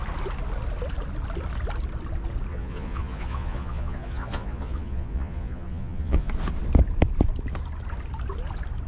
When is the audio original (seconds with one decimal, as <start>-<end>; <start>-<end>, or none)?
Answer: 0.0-2.5; 6.3-8.9